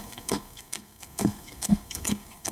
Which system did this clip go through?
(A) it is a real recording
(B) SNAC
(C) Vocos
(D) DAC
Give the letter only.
B